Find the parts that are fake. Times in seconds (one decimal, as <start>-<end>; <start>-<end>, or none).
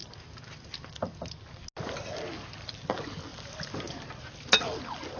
none